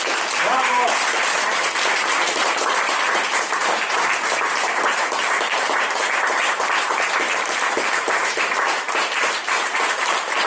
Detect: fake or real fake